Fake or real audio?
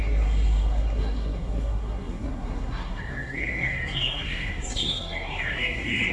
fake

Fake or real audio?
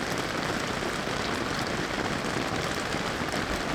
real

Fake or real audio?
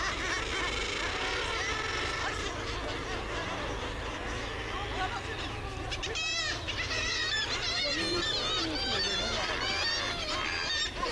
real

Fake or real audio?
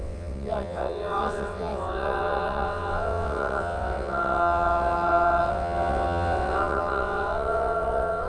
fake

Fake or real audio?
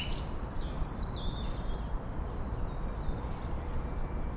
real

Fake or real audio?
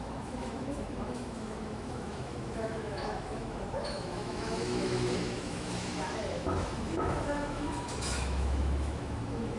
fake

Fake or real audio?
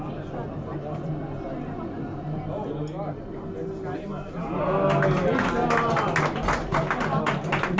real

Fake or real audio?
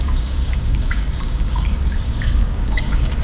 fake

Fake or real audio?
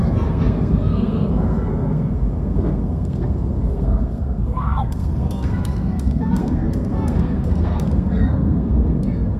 fake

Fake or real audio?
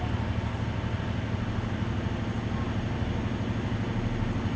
real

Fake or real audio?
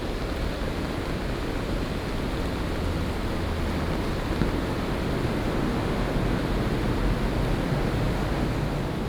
real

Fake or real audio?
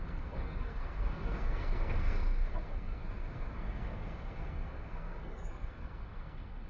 fake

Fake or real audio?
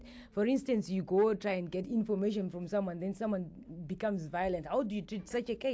real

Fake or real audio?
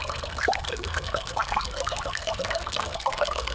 fake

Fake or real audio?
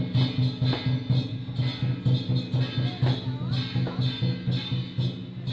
real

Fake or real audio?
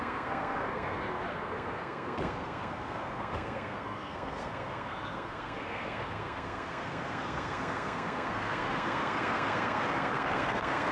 fake